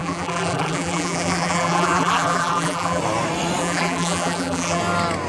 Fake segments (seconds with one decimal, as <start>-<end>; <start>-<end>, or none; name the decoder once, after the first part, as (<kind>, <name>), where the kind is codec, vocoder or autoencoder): 0.0-3.0 (vocoder, BigVGAN v2); 3.6-4.8

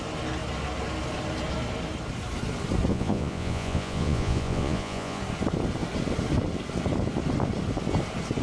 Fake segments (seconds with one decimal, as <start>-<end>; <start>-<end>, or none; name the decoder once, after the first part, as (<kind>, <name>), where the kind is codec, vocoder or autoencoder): 2.9-5.2 (vocoder, Vocos)

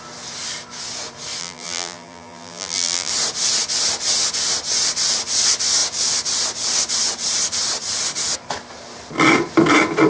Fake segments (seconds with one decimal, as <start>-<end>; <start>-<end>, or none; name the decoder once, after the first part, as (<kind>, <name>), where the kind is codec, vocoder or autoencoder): 1.4-3.1 (vocoder, BigVGAN v2)

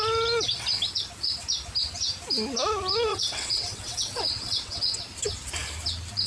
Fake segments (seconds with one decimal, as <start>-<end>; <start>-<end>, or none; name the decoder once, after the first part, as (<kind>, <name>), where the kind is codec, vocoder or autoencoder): 3.1-5.0 (vocoder, WaveNeXt)